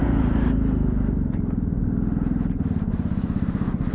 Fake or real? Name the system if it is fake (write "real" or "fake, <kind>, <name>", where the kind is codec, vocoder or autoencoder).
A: real